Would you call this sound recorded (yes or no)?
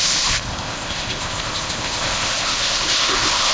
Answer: no